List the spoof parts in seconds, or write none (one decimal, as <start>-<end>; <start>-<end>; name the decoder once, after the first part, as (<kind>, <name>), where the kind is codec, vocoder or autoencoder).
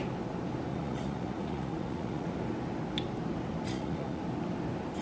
0.7-2.3 (vocoder, Vocos); 3.7-4.2